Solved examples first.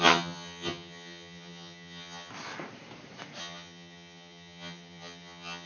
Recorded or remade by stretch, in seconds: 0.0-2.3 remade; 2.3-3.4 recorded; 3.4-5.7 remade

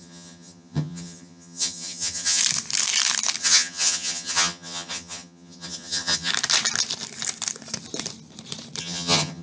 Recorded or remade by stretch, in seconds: 0.0-2.4 remade; 2.4-3.4 recorded; 3.4-6.3 remade; 6.3-8.8 recorded; 8.8-9.4 remade